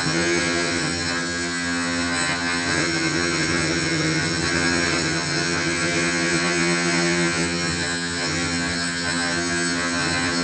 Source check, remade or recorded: remade